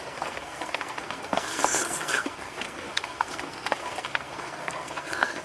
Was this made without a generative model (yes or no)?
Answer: no